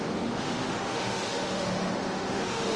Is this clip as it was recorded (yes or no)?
no